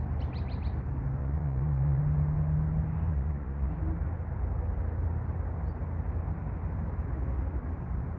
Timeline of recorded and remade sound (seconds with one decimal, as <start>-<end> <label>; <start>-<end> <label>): 0.0-1.2 recorded; 1.2-2.0 remade; 2.0-3.1 recorded; 3.1-3.7 remade; 3.7-8.2 recorded